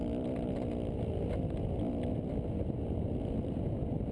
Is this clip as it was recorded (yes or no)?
yes